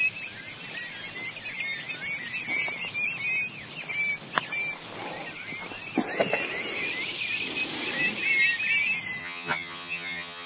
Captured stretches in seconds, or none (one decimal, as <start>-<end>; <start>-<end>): 0.0-9.2